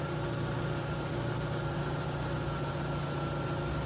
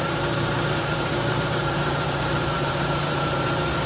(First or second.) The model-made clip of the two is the second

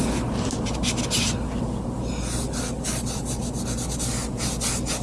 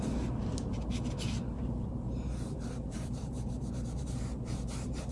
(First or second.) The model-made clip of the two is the second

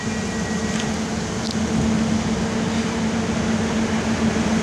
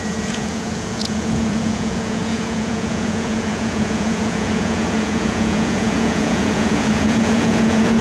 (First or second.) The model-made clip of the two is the second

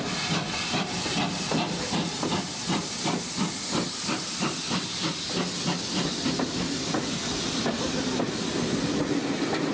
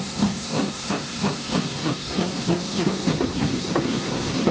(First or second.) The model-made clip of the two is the second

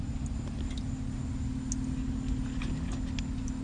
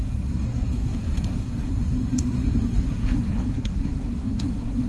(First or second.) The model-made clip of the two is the second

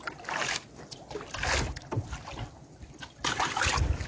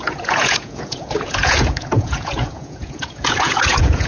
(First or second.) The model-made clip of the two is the second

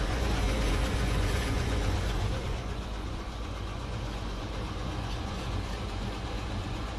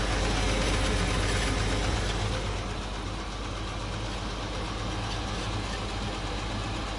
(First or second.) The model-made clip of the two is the first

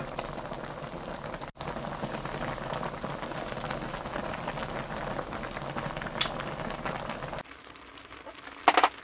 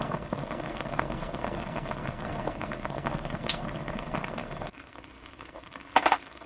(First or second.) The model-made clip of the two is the second